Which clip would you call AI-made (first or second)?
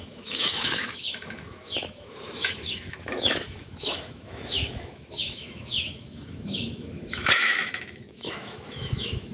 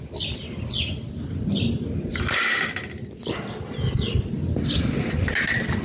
first